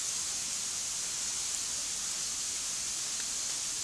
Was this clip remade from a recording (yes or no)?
no